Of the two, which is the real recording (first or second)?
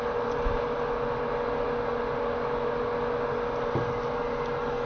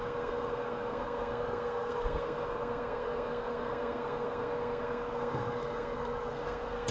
first